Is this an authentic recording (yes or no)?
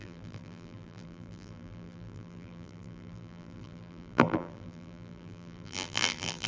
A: no